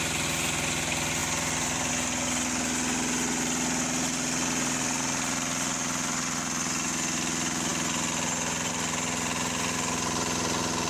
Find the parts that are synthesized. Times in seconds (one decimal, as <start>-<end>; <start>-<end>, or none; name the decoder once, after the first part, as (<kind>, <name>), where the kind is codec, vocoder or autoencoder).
1.2-1.9 (vocoder, BigVGAN v2)